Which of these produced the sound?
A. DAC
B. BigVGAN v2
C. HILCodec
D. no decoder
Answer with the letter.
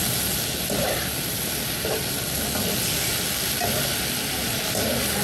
D